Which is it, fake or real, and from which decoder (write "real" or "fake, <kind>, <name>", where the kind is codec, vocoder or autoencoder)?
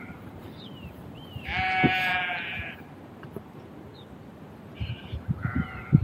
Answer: fake, vocoder, BigVGAN v2